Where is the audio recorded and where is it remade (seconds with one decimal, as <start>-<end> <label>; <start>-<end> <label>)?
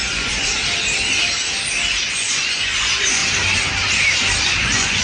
0.0-0.6 remade; 0.6-2.1 recorded; 2.1-3.2 remade; 3.2-4.4 recorded; 4.4-5.0 remade